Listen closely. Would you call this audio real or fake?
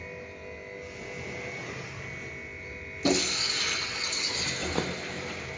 real